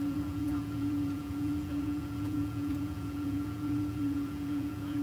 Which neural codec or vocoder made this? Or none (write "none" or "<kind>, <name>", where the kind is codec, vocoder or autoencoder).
vocoder, Vocos